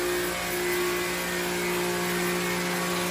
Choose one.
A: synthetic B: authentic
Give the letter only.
B